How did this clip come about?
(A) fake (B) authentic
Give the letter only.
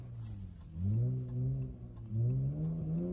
B